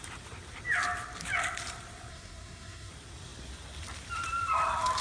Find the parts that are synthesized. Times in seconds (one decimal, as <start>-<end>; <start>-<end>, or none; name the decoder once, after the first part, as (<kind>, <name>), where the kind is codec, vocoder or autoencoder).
2.1-2.9 (codec, SNAC)